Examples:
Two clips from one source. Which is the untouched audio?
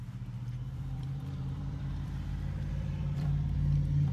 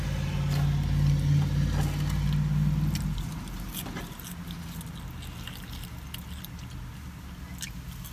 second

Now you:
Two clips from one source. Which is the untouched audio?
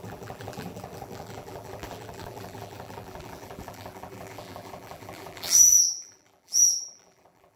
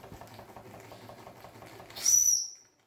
second